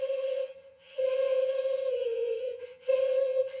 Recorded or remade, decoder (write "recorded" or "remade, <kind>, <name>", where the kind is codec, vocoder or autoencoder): remade, vocoder, HiFi-GAN